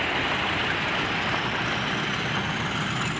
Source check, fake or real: real